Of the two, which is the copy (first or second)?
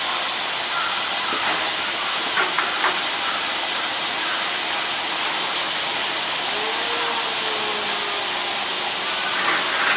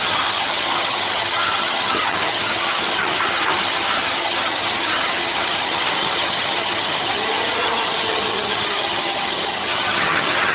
second